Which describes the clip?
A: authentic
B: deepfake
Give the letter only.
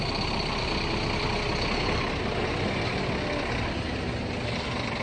A